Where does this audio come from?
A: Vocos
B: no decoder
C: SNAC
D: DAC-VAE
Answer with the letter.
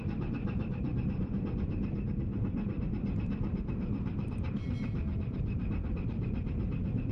B